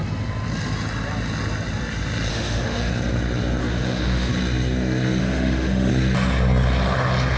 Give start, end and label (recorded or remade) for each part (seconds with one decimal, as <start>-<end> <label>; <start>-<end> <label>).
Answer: 0.0-2.3 recorded; 2.3-2.9 remade; 2.9-3.6 recorded; 3.6-4.3 remade; 4.3-5.2 recorded; 5.2-5.9 remade; 5.9-7.4 recorded